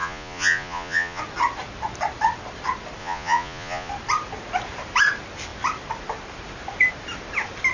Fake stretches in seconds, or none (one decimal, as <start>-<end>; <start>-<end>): 0.0-1.2; 3.0-3.9